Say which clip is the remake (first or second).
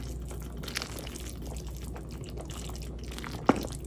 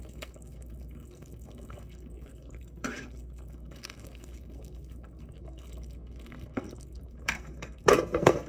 second